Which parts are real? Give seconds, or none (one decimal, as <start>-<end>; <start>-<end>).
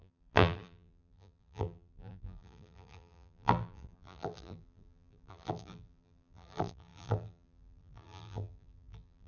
none